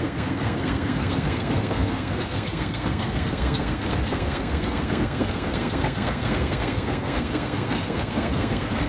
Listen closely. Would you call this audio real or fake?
fake